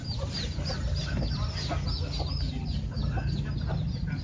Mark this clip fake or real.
real